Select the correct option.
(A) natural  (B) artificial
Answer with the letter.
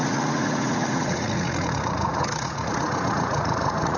B